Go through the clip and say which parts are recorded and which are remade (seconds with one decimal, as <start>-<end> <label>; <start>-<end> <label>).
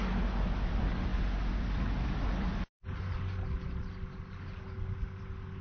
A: 0.0-1.1 recorded; 1.1-2.7 remade; 2.7-5.6 recorded